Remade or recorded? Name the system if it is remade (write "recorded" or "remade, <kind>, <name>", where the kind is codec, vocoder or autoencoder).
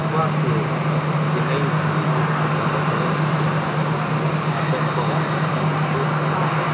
recorded